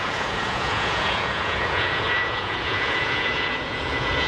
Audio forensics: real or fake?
fake